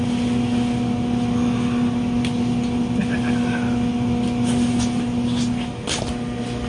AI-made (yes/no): no